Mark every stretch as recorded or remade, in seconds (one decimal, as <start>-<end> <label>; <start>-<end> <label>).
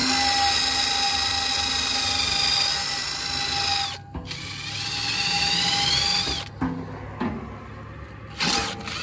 0.0-9.0 recorded